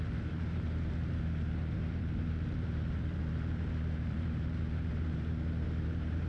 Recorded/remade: remade